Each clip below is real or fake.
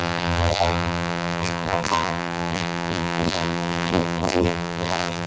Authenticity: fake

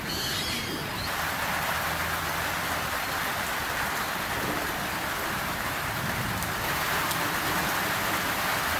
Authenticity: fake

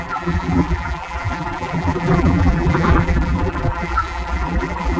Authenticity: fake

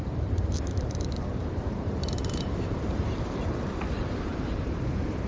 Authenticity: fake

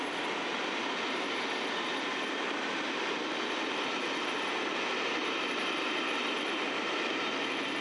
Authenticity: real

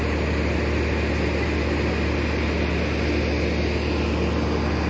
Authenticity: real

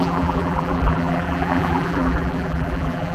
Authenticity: fake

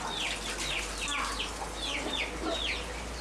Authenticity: real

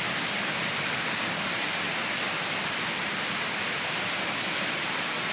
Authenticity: fake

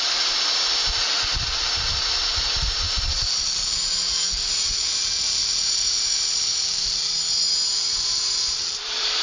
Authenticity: fake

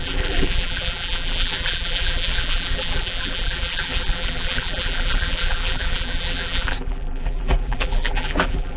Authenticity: fake